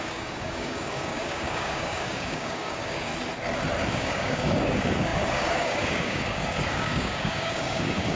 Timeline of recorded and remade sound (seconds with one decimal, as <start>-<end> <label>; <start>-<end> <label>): 0.0-3.1 remade; 3.1-3.9 recorded; 3.9-8.2 remade